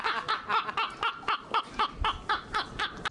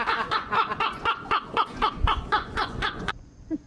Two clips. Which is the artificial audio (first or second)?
second